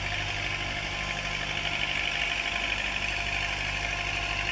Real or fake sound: real